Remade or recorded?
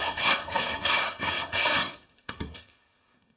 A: remade